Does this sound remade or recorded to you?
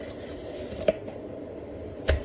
recorded